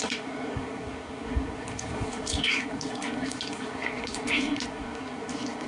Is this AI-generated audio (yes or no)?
yes